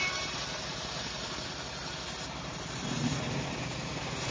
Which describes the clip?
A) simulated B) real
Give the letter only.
B